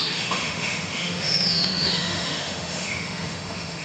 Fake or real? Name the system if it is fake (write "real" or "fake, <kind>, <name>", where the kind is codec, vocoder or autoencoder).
fake, autoencoder, DAC-VAE